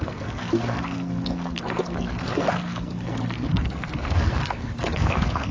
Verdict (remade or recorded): remade